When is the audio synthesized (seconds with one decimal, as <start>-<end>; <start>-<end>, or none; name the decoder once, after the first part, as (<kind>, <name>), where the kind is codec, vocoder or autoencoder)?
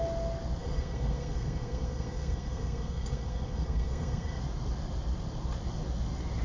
0.6-4.4 (codec, SNAC)